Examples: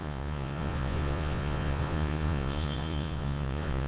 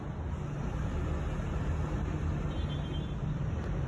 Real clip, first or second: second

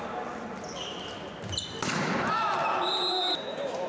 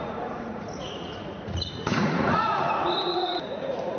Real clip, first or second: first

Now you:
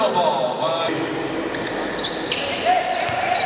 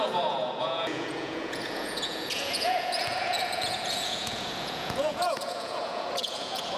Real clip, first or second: first